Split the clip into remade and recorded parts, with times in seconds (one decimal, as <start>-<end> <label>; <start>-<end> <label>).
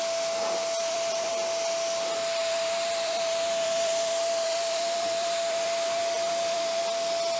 0.0-0.8 recorded; 0.8-1.3 remade; 1.3-2.4 recorded; 2.4-6.8 remade; 6.8-7.4 recorded